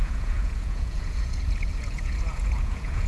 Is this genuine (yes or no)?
no